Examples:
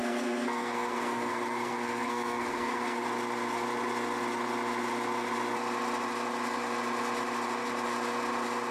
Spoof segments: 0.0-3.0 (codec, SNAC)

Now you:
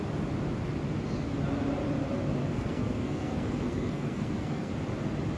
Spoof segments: 2.4-4.7 (codec, SNAC)